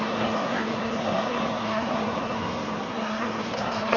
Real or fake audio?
fake